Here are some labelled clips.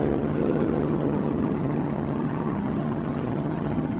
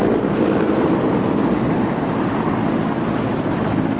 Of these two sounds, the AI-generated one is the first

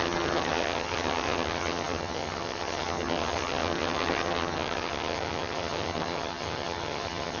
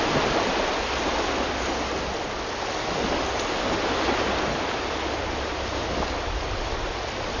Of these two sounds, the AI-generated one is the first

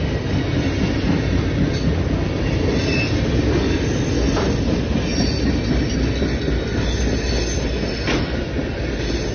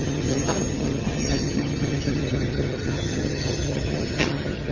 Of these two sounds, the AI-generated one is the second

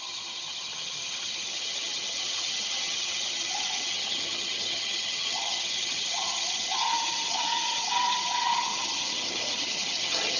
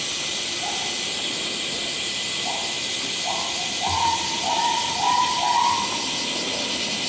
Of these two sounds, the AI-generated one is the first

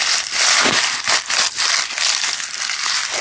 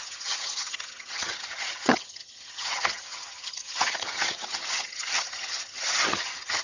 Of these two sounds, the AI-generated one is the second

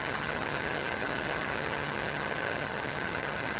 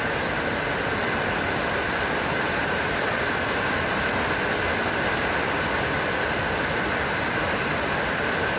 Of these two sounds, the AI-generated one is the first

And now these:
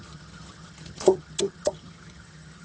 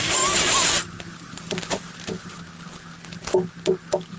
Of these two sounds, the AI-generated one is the first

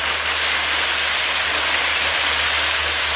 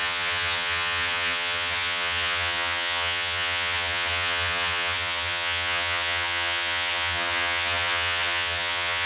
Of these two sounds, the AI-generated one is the second